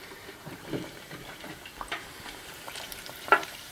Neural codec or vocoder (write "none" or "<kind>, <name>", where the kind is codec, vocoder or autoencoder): vocoder, BigVGAN v2